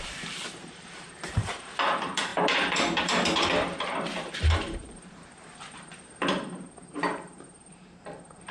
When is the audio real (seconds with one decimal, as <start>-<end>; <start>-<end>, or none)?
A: none